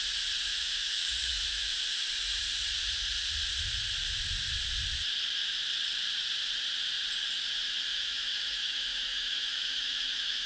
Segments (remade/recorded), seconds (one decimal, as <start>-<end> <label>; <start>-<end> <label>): 0.0-0.5 recorded; 0.5-2.1 remade; 2.1-7.9 recorded; 7.9-10.5 remade